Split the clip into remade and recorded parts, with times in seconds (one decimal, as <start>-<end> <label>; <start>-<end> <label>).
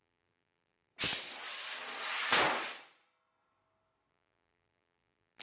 0.0-0.9 remade; 0.9-4.1 recorded; 4.1-5.4 remade